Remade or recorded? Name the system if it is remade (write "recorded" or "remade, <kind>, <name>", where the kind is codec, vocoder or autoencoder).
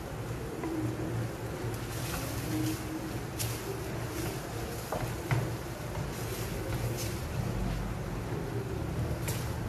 recorded